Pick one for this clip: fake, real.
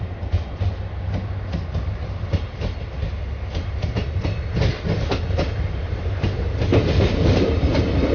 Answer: real